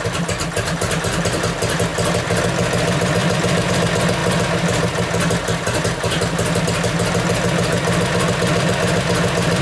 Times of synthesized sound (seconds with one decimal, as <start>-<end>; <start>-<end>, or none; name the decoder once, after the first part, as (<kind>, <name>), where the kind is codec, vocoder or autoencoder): 3.2-3.7 (vocoder, BigVGAN v2)